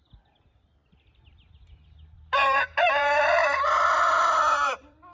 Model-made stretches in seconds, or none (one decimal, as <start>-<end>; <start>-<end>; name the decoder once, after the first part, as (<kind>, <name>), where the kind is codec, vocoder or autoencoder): 0.0-3.4 (vocoder, BigVGAN v2); 4.0-5.1